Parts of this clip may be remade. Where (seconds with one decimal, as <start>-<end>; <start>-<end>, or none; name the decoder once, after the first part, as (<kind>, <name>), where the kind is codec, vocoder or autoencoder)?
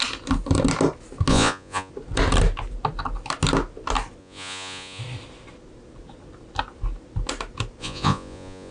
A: 1.3-1.9 (vocoder, Vocos); 4.2-5.0; 7.8-8.7